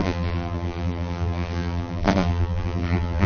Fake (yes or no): yes